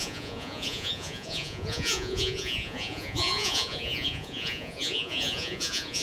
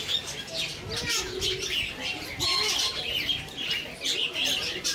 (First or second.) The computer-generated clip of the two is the first